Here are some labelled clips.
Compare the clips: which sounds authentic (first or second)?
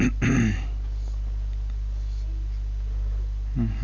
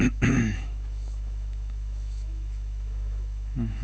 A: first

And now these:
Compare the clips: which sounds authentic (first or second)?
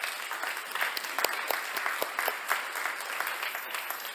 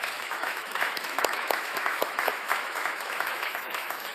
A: first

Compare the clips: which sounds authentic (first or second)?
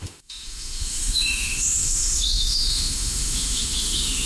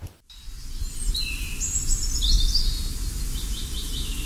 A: second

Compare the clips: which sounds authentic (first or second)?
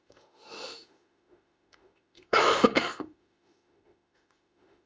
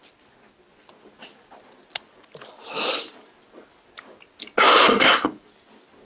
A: second